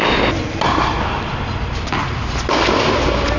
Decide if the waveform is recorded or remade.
recorded